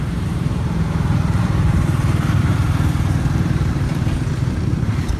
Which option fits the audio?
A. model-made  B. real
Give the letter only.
A